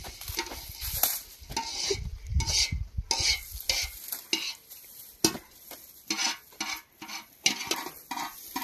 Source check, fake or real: real